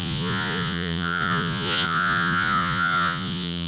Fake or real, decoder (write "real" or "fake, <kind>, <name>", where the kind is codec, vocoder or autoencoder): fake, vocoder, Vocos